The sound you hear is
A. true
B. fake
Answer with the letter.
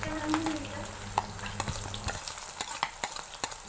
A